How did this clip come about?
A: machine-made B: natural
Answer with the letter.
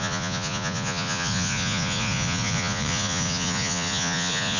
A